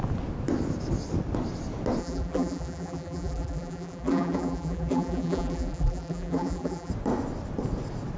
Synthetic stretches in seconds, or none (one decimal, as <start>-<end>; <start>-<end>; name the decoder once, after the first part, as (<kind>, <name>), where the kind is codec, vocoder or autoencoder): 2.0-6.9 (vocoder, BigVGAN v2)

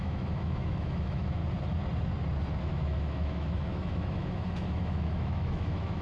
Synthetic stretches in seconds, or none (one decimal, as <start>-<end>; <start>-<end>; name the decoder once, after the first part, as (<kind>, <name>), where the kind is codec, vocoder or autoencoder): 0.0-1.4 (autoencoder, DAC-VAE); 2.6-6.0

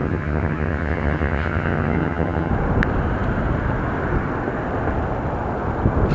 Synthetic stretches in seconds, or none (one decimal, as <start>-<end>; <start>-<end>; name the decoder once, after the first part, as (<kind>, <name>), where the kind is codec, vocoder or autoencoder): 0.0-2.5 (vocoder, HiFi-GAN)

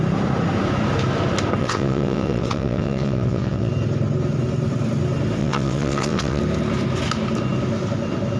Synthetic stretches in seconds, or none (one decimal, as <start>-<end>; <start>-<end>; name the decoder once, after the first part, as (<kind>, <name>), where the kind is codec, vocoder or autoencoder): 1.6-3.7 (vocoder, WaveNeXt); 5.4-6.4

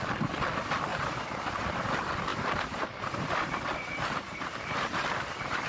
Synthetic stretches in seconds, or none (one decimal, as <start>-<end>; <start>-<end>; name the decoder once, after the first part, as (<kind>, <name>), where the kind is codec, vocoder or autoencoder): 0.9-1.6 (vocoder, BigVGAN v2); 2.3-5.7

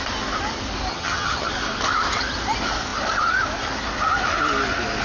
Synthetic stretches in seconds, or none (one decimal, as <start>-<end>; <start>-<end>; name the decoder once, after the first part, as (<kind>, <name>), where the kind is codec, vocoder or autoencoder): 0.9-1.5 (vocoder, HiFi-GAN)